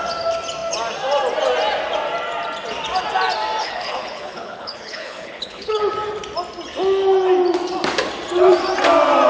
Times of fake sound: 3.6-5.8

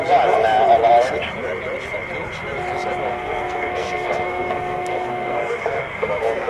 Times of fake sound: 3.1-6.5